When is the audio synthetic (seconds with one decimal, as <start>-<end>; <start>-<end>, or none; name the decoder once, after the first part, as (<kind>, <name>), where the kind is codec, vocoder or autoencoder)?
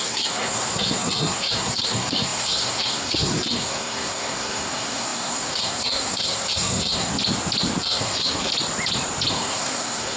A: 0.0-7.1 (codec, SNAC); 7.8-8.5; 9.3-10.2